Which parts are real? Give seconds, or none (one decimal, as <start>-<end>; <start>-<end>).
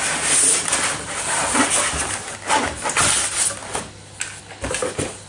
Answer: 0.0-5.3